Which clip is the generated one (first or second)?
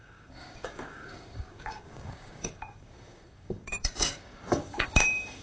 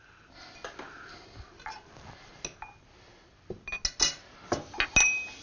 first